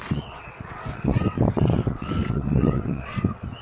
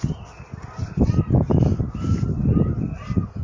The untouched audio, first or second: second